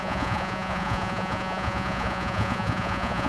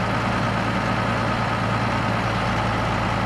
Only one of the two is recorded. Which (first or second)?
second